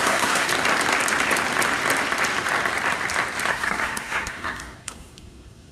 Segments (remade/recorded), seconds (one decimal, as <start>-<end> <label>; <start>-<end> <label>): 0.0-0.5 remade; 0.5-3.5 recorded; 3.5-5.7 remade